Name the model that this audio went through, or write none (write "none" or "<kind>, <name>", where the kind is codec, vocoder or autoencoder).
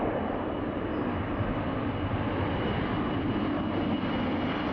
none